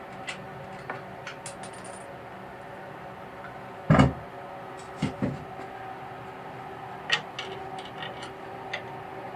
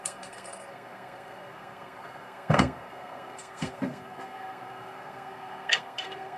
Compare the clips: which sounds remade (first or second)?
second